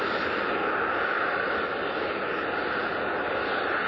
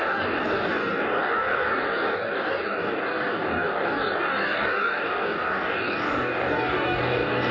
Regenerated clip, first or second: second